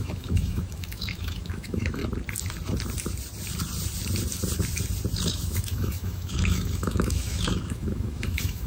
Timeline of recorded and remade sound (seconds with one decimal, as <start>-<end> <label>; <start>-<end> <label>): 0.0-2.0 remade; 2.0-5.3 recorded; 5.3-8.7 remade